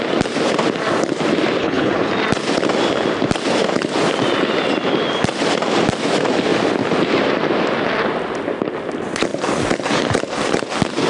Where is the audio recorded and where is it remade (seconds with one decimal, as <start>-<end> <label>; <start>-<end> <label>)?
0.0-1.6 recorded; 1.6-2.1 remade; 2.1-11.1 recorded